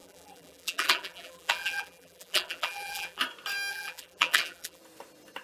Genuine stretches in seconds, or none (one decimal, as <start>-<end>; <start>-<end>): 3.2-3.7; 4.8-5.4